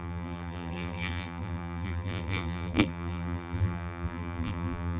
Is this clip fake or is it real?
fake